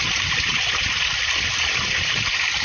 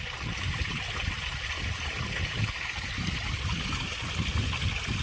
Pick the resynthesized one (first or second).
first